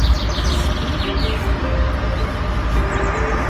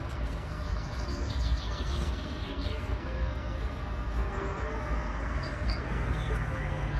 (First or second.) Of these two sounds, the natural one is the first